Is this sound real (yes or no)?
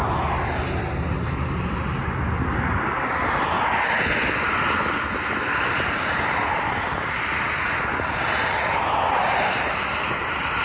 yes